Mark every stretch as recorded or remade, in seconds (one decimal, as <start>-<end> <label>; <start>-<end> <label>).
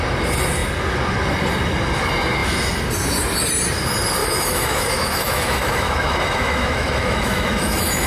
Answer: 0.0-4.2 recorded; 4.2-8.1 remade